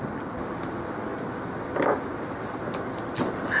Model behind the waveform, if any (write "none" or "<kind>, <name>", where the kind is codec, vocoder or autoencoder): none